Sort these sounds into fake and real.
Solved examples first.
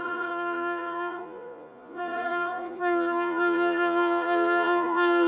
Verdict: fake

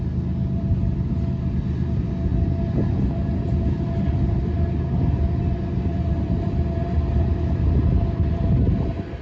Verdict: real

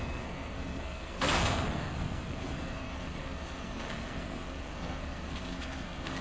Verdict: fake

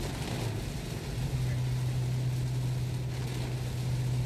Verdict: real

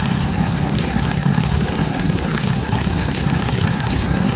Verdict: fake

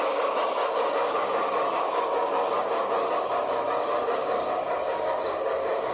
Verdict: fake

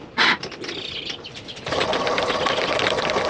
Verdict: real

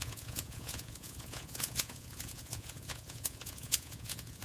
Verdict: fake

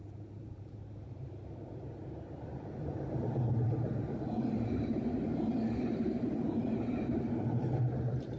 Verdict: fake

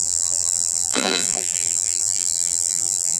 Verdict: fake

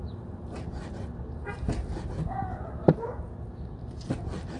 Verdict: real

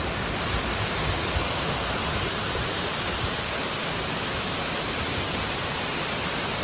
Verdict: real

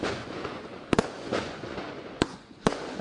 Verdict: fake